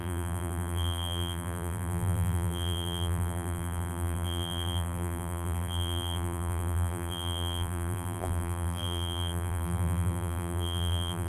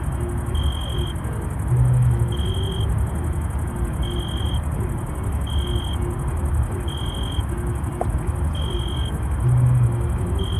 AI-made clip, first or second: first